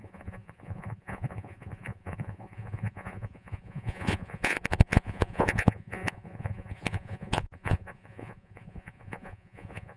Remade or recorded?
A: remade